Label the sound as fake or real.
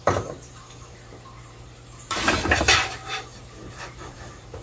fake